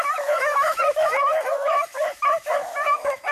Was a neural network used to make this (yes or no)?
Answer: yes